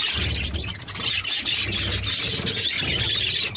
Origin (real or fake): real